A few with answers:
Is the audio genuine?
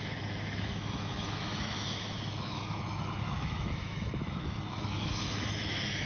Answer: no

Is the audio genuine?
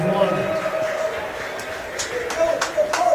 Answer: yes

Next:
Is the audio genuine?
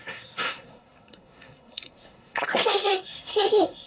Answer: no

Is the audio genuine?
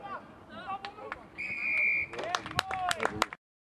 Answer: yes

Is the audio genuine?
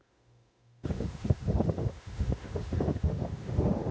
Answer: no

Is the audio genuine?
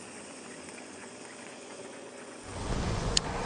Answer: no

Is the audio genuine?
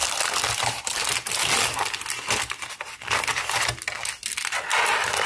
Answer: yes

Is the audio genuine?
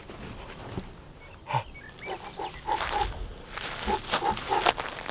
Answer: yes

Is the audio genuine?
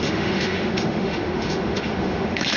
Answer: no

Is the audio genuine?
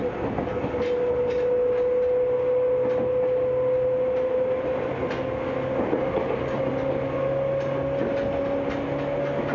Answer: yes